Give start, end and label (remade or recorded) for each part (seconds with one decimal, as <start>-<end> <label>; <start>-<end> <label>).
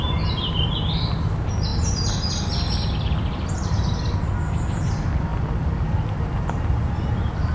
0.0-7.5 recorded